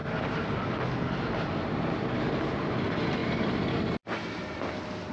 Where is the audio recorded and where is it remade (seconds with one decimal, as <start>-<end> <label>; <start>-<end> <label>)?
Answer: 0.0-5.1 recorded